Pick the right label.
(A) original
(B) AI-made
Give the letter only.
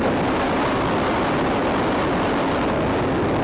A